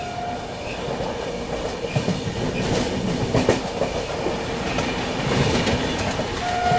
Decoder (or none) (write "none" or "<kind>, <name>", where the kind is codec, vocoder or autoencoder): none